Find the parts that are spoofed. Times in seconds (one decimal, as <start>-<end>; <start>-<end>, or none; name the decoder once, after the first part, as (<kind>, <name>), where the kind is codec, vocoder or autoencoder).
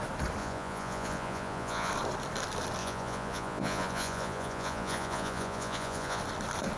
0.4-1.9 (vocoder, Vocos); 2.8-6.2